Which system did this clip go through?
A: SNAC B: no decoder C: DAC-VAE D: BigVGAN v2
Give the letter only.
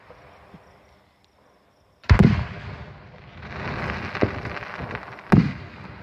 B